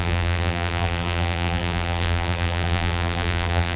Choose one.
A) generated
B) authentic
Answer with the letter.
A